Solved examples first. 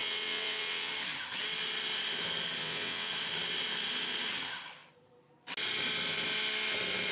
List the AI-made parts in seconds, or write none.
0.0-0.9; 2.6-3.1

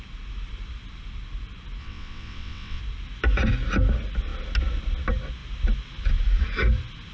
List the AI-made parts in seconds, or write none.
1.8-2.8

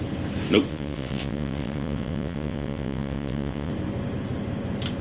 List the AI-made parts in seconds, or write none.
0.7-3.7

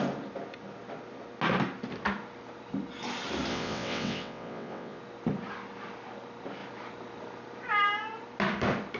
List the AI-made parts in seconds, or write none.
3.5-5.0

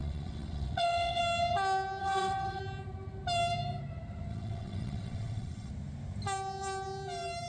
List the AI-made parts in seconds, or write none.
0.0-1.2; 2.0-2.6; 4.3-5.7

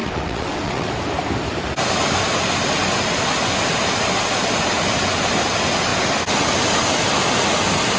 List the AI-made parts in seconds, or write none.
0.0-0.9

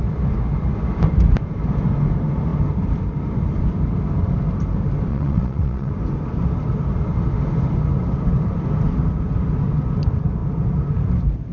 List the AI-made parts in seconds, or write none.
5.1-5.9

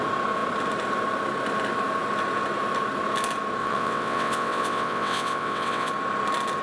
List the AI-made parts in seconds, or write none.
3.6-5.9